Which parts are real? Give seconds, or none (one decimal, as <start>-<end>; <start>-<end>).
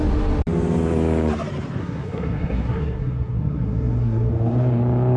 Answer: 0.0-1.8; 4.3-5.2